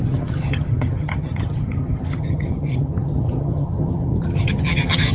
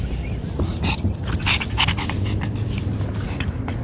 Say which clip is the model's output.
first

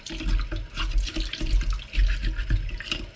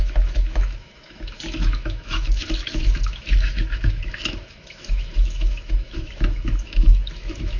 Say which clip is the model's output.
second